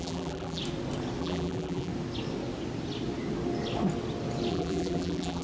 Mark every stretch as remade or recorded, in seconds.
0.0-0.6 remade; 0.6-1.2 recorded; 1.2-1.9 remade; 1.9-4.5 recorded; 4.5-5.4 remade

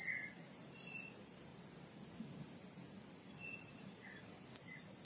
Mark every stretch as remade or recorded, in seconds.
0.0-5.0 recorded

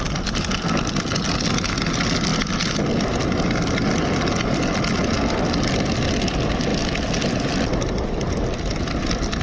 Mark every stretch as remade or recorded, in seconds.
0.0-9.4 recorded

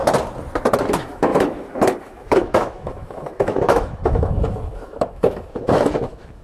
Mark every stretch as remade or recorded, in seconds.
0.0-0.9 recorded; 0.9-6.4 remade

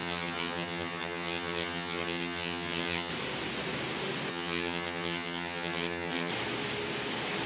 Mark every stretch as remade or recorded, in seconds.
0.0-3.1 remade; 3.1-4.3 recorded; 4.3-6.3 remade; 6.3-7.5 recorded